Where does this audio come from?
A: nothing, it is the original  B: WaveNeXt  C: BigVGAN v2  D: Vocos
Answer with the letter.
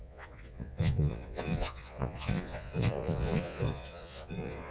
D